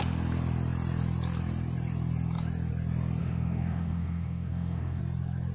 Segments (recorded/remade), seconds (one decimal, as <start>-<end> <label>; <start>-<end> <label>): 0.0-3.2 recorded; 3.2-5.0 remade; 5.0-5.5 recorded